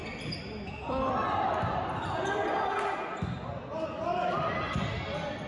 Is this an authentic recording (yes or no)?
yes